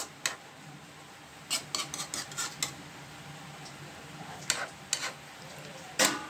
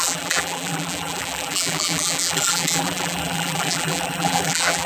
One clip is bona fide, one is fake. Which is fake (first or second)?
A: second